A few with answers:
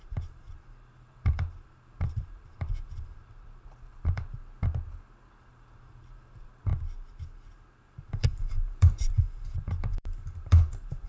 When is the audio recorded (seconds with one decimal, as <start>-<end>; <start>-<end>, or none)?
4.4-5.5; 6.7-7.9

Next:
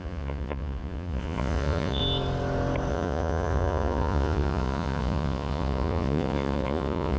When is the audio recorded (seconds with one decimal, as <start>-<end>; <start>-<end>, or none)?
2.0-2.9

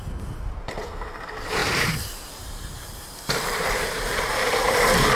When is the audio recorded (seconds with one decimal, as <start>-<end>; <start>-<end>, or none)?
0.0-1.6; 4.7-5.2

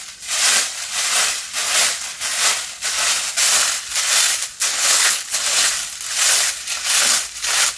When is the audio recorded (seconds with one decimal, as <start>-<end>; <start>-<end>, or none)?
0.0-4.7; 5.4-7.8

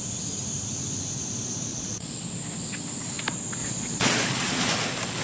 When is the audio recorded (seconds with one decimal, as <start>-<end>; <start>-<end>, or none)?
0.0-1.7; 2.2-3.6; 4.7-5.2

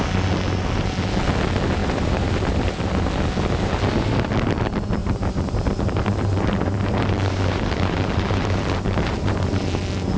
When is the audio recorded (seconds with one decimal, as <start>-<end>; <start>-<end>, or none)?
0.0-1.8; 2.8-5.0; 9.4-10.2